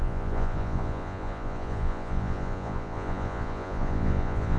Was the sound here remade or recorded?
remade